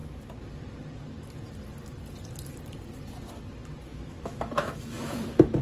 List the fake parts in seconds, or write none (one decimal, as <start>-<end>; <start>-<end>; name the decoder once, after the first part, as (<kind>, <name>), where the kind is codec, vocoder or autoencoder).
3.9-5.6 (autoencoder, DAC-VAE)